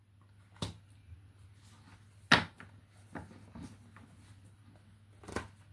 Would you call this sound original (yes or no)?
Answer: yes